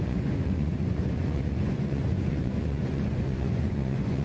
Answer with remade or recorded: remade